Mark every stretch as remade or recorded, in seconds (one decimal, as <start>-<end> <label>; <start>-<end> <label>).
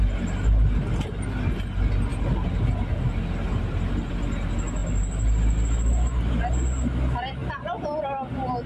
0.0-8.7 recorded